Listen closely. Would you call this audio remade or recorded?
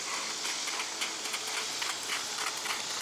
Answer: recorded